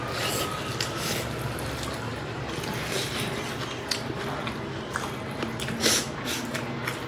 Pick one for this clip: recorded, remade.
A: recorded